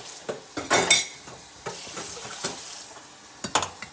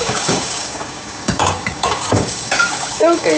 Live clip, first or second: first